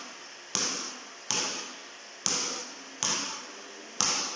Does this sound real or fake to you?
real